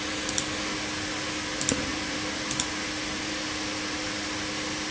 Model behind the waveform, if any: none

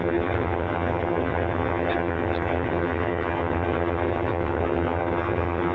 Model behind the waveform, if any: vocoder, HiFi-GAN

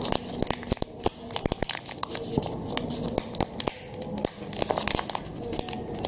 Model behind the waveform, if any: none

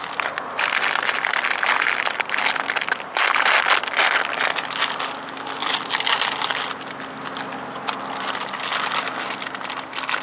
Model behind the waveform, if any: none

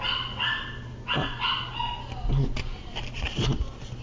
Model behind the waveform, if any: none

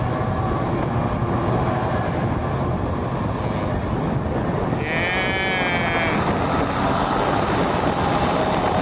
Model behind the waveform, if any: none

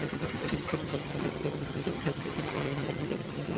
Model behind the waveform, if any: vocoder, HiFi-GAN